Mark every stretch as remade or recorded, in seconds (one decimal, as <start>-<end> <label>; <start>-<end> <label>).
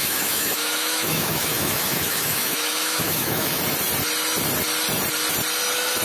0.0-3.6 remade; 3.6-6.0 recorded